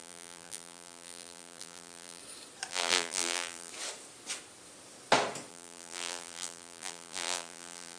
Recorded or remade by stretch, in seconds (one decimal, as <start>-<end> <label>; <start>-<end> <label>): 0.0-2.2 remade; 2.2-2.7 recorded; 2.7-3.7 remade; 3.7-5.5 recorded; 5.5-8.0 remade